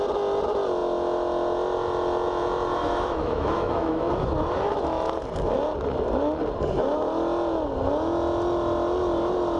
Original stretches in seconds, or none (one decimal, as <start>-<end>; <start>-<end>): 0.0-2.8; 4.1-9.6